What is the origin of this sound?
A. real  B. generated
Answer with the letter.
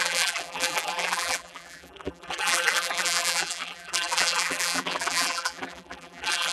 B